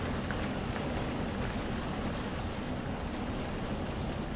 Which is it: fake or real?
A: real